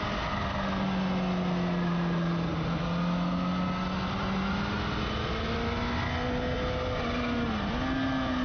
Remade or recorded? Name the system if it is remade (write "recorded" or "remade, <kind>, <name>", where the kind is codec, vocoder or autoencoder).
recorded